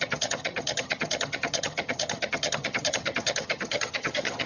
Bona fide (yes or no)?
no